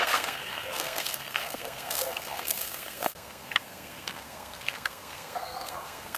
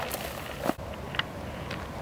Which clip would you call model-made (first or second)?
first